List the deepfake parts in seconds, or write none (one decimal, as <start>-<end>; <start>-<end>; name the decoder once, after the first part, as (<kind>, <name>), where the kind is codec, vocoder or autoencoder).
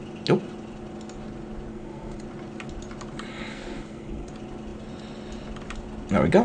1.7-2.2 (codec, SNAC); 3.3-4.3